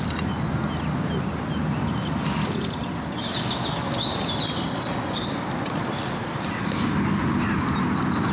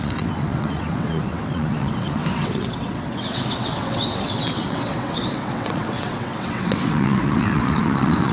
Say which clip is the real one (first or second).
first